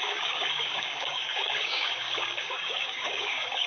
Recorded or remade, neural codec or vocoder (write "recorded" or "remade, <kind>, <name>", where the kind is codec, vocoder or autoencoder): remade, codec, DAC